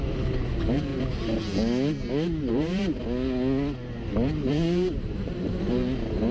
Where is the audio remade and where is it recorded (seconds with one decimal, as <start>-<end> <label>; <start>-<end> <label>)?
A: 0.0-0.9 remade; 0.9-2.5 recorded; 2.5-3.0 remade; 3.0-4.5 recorded; 4.5-6.3 remade